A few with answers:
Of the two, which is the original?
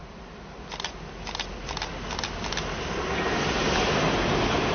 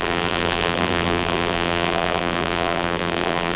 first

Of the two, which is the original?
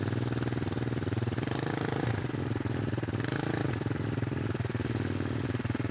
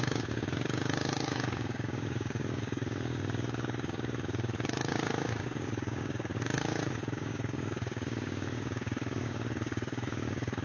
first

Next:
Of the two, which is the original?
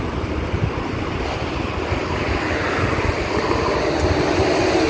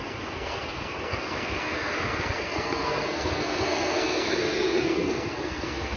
first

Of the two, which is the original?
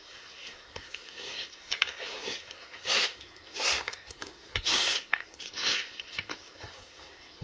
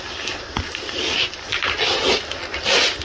second